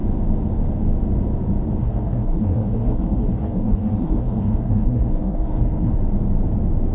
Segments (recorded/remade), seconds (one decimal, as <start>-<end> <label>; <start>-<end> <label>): 0.0-1.8 recorded; 1.8-5.9 remade; 5.9-6.9 recorded